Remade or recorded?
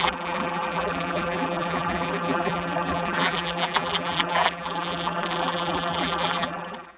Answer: remade